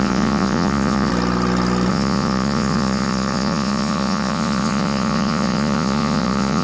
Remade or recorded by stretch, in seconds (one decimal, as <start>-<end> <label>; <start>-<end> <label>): 0.0-1.1 remade; 1.1-1.9 recorded; 1.9-6.6 remade